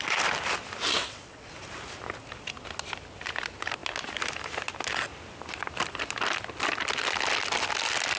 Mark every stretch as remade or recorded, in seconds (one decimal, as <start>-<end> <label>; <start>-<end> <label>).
0.0-1.0 recorded; 1.0-1.5 remade; 1.5-8.2 recorded